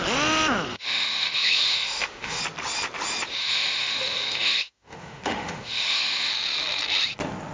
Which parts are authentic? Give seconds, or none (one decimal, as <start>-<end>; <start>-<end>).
0.0-0.7; 2.4-3.3; 6.3-7.5